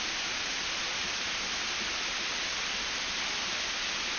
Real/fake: real